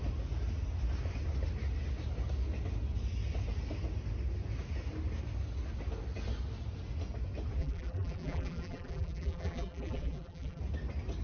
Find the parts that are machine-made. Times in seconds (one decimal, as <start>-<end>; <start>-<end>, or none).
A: 7.6-10.6

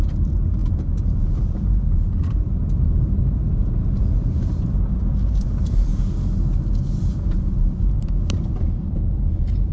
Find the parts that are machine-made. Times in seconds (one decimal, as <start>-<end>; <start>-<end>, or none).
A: 0.0-3.5; 4.0-5.9; 7.1-9.7